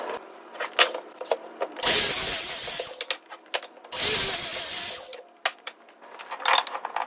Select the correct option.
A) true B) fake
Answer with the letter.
A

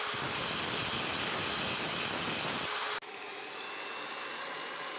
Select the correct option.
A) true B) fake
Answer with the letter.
A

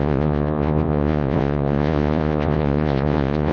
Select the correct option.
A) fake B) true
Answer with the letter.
A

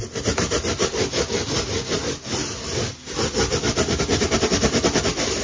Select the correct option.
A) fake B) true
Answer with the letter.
B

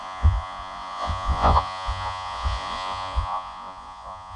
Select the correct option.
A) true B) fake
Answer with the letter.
B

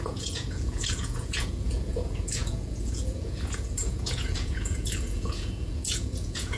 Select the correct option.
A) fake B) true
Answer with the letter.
A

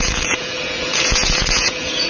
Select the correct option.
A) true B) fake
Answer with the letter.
B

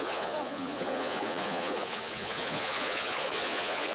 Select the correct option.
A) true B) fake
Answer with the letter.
B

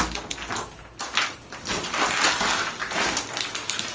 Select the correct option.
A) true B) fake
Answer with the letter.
A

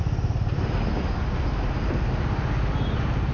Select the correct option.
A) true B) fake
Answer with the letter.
A